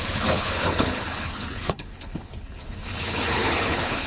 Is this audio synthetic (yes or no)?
yes